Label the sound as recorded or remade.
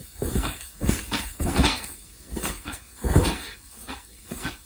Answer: remade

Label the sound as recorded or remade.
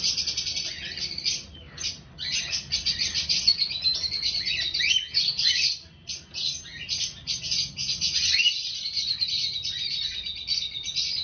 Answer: recorded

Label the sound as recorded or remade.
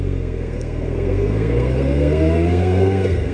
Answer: remade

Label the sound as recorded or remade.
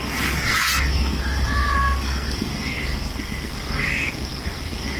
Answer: remade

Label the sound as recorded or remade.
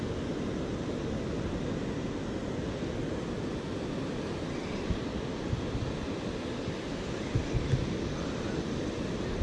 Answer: recorded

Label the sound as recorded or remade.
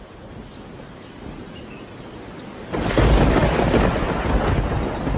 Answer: recorded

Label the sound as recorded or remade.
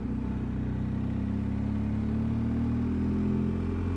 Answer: recorded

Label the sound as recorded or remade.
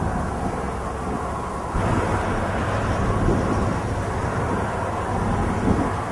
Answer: recorded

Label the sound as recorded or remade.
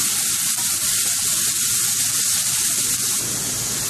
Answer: recorded